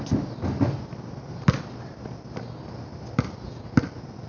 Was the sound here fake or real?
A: real